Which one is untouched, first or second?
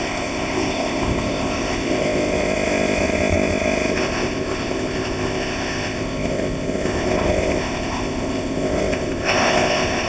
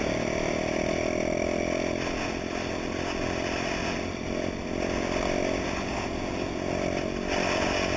second